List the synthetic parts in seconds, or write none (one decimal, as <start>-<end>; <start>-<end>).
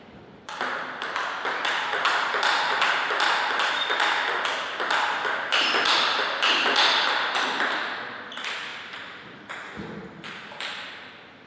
none